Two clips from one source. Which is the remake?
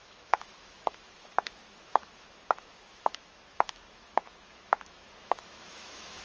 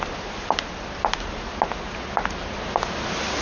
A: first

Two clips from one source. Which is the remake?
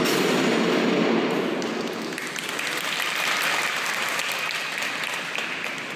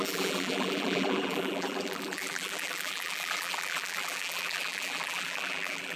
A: second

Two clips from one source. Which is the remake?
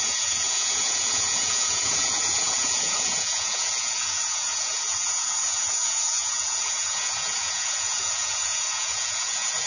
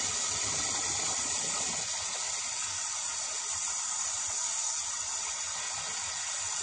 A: first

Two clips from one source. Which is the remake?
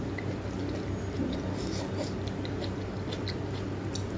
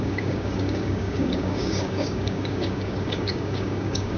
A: second